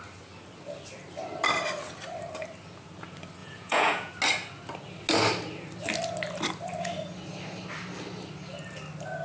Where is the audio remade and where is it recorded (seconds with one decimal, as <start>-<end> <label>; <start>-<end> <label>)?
0.0-3.4 recorded; 3.4-4.1 remade; 4.1-9.2 recorded